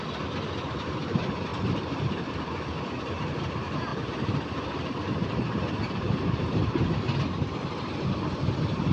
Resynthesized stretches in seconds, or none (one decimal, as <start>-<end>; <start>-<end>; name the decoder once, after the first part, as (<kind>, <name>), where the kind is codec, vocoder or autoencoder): 1.5-2.1 (vocoder, BigVGAN v2); 3.9-7.3